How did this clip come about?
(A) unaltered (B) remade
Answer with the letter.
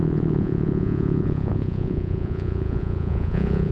B